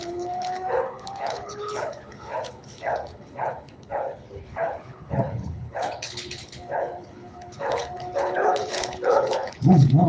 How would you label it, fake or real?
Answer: fake